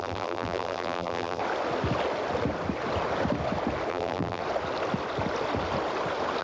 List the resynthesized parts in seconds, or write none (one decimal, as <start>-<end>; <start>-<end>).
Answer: 0.0-1.4; 3.9-4.4